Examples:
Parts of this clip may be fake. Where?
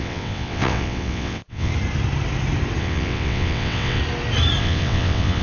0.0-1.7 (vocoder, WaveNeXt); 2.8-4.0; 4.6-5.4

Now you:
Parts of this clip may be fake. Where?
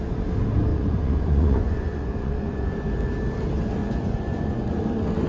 0.7-2.7 (vocoder, Vocos); 3.8-4.8